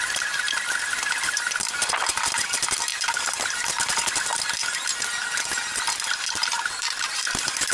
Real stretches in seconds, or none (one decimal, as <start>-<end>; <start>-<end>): 0.0-2.9; 4.4-6.4; 7.1-7.7